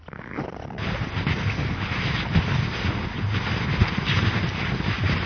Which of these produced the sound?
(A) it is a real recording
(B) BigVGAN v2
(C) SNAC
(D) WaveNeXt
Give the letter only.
A